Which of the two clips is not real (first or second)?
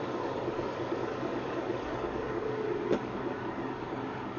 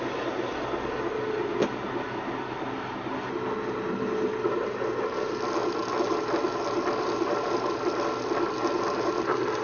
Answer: first